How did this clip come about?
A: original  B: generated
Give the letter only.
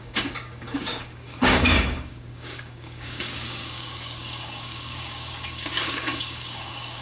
B